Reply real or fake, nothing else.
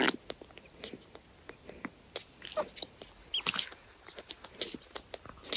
real